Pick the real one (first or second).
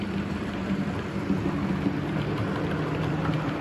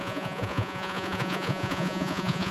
first